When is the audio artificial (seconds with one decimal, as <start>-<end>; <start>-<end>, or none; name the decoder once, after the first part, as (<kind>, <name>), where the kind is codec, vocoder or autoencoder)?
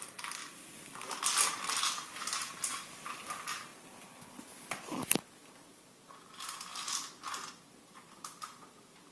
0.0-0.4 (vocoder, BigVGAN v2); 3.2-9.1